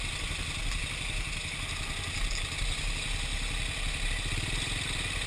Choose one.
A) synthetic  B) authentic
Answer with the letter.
B